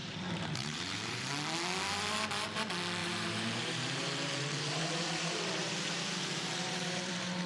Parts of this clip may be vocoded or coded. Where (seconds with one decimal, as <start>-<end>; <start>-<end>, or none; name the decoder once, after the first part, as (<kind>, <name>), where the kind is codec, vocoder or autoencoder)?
0.0-1.3 (vocoder, BigVGAN v2); 3.0-7.5